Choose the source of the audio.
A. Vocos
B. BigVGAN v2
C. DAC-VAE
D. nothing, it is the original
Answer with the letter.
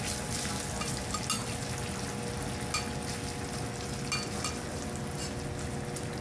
D